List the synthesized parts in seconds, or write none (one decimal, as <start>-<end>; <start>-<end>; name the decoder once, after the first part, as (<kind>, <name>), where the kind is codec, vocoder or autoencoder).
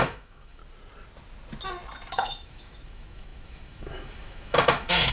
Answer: 0.0-0.6 (autoencoder, DAC-VAE); 2.1-5.1